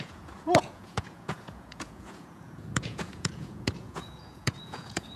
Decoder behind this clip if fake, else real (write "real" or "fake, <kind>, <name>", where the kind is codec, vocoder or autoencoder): fake, vocoder, Vocos